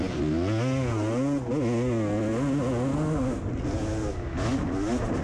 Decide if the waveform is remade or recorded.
recorded